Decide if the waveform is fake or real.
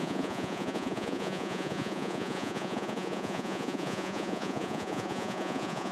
fake